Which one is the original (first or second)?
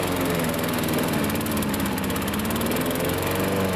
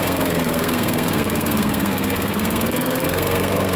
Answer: first